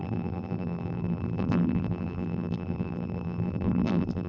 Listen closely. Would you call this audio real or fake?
fake